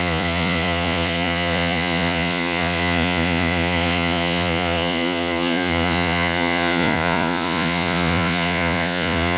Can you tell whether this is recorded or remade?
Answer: remade